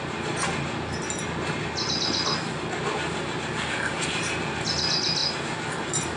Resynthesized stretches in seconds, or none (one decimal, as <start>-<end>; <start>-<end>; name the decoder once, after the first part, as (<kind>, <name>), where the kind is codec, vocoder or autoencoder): none